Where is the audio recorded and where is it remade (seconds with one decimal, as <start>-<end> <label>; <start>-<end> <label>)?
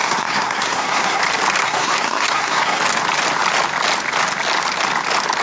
0.0-1.2 remade; 1.2-1.6 recorded; 1.6-2.8 remade; 2.8-5.4 recorded